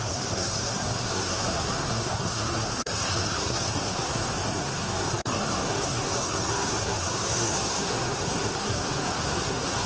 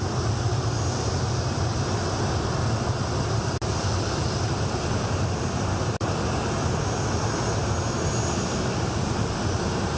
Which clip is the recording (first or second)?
second